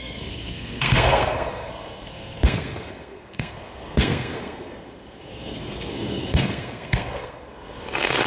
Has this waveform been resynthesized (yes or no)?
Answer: yes